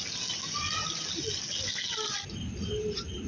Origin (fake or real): real